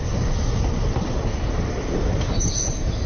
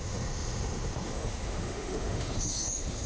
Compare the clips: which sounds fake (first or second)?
second